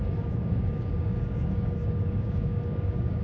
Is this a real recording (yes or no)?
no